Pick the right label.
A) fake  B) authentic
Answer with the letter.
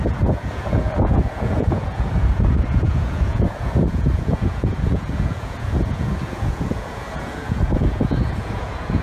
A